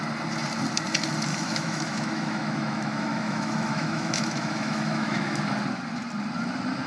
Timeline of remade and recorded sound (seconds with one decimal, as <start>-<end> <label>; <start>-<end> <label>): 0.0-1.3 recorded; 1.3-5.4 remade; 5.4-6.9 recorded